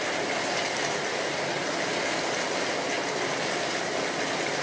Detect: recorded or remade recorded